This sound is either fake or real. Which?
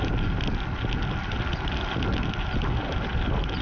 real